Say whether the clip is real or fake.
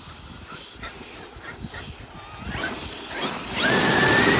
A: real